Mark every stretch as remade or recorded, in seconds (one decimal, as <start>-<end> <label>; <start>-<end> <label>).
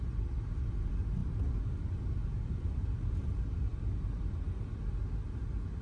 0.0-5.8 recorded